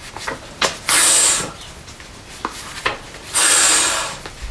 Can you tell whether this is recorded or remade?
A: recorded